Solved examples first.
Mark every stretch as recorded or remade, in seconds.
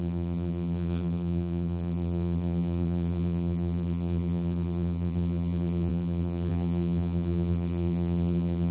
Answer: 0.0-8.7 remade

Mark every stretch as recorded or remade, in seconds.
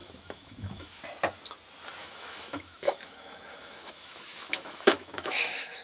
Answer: 0.0-1.0 remade; 1.0-2.0 recorded; 2.0-5.8 remade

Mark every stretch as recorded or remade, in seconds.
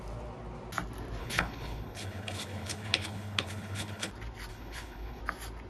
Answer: 0.0-1.2 recorded; 1.2-4.1 remade; 4.1-4.5 recorded; 4.5-5.2 remade; 5.2-5.7 recorded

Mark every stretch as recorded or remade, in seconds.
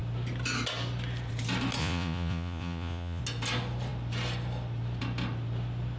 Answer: 0.0-1.8 recorded; 1.8-3.2 remade; 3.2-6.0 recorded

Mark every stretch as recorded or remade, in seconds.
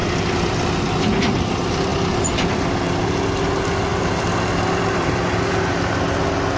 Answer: 0.0-3.9 recorded; 3.9-5.7 remade; 5.7-6.6 recorded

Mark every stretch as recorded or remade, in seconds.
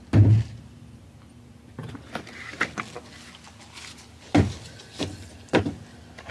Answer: 0.0-6.3 recorded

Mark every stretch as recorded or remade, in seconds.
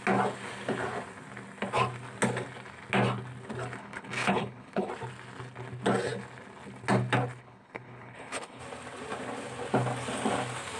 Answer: 0.0-3.8 recorded; 3.8-4.9 remade; 4.9-7.4 recorded; 7.4-8.6 remade; 8.6-10.8 recorded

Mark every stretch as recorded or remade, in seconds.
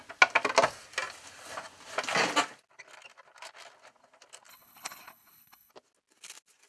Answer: 0.0-4.5 recorded; 4.5-5.7 remade; 5.7-6.7 recorded